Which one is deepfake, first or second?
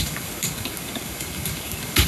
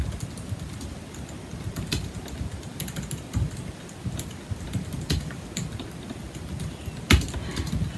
first